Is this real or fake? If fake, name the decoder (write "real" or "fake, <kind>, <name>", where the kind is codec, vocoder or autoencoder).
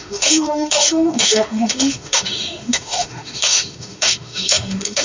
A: fake, autoencoder, DAC-VAE